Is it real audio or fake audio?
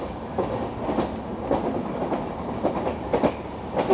real